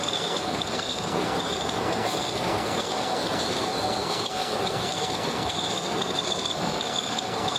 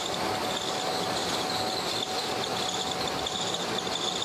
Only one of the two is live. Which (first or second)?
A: second